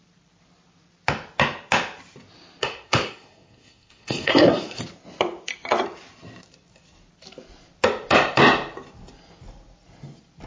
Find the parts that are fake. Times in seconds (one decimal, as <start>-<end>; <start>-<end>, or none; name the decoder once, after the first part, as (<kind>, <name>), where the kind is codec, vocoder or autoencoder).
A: 2.6-4.8 (codec, SNAC)